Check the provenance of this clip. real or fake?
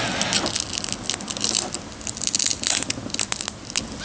real